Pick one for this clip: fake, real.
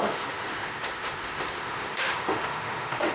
fake